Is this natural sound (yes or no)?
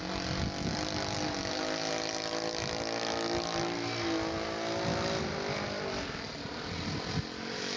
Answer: yes